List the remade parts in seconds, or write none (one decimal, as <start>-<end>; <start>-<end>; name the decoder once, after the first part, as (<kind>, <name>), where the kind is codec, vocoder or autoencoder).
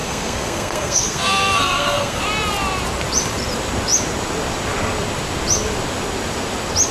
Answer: 0.0-2.2 (codec, SNAC)